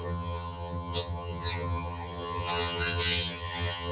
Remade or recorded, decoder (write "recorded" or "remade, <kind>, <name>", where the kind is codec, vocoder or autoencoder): remade, vocoder, HiFi-GAN